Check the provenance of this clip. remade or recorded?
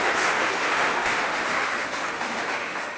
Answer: remade